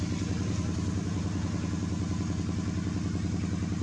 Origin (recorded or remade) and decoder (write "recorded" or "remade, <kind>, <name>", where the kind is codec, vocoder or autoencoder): recorded